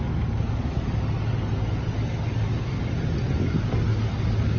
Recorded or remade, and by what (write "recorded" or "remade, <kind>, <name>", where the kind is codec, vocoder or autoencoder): recorded